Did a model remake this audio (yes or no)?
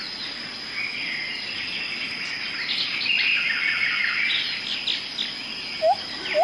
no